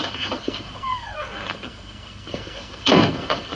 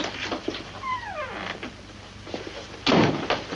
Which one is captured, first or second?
second